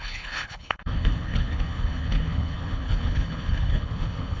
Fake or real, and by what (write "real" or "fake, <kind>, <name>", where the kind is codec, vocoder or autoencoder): fake, codec, HILCodec